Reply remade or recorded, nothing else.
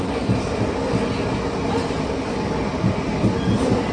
recorded